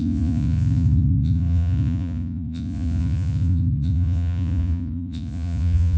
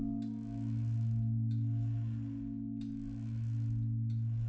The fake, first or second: first